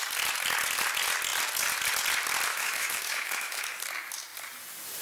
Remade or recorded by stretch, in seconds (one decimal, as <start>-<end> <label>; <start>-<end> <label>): 0.0-2.5 recorded; 2.5-3.7 remade; 3.7-5.0 recorded